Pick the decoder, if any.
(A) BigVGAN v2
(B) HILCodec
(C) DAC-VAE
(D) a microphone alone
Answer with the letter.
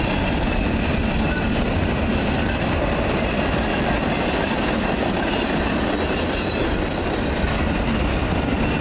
A